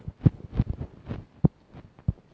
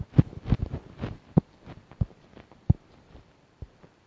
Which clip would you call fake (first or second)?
second